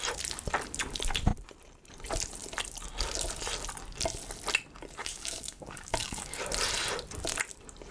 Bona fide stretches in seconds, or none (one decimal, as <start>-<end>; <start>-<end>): 0.0-5.0; 6.4-7.9